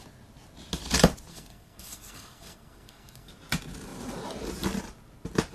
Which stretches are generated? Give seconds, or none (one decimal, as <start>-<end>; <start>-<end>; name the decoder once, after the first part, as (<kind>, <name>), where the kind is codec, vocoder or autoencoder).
1.3-3.3 (codec, SNAC)

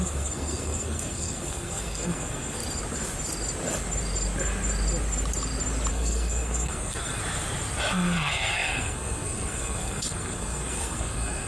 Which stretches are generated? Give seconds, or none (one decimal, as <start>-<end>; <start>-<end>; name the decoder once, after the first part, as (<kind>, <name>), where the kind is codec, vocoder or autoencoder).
0.0-2.6 (codec, SNAC); 5.9-7.2; 7.9-11.5

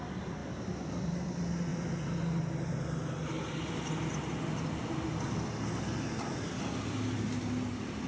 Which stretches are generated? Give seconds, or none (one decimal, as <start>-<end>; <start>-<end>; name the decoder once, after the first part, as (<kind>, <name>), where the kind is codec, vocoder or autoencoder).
none

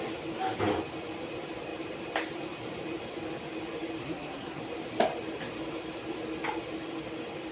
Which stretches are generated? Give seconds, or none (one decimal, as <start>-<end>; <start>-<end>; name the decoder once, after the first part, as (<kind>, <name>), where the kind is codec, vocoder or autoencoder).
4.0-4.6 (codec, SNAC)

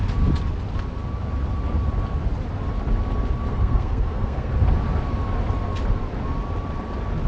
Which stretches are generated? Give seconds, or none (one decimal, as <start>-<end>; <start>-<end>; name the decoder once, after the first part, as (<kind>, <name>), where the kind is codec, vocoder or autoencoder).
3.5-4.5 (codec, SNAC)

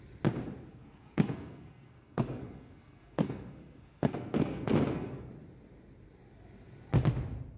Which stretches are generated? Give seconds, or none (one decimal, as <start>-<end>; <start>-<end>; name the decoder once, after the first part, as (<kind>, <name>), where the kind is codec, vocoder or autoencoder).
0.7-5.3 (codec, SNAC)